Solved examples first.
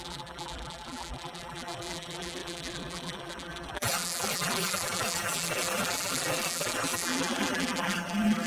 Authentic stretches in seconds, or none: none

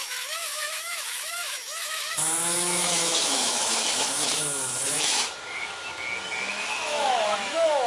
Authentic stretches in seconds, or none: 5.9-6.5

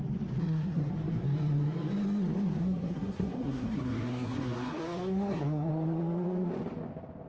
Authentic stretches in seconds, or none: 0.0-0.4; 0.9-2.6; 5.7-7.3

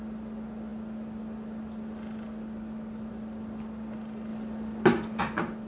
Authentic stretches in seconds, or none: 0.0-5.7